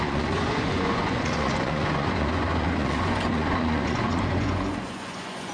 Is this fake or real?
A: fake